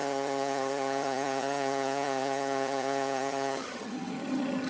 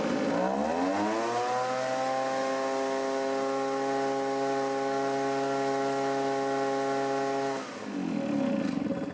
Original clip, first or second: second